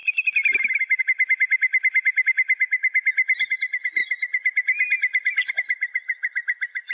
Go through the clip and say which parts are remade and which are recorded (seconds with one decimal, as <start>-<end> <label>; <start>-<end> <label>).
0.0-6.9 recorded